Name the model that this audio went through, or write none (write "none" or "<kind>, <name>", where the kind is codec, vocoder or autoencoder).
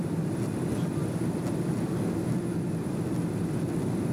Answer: none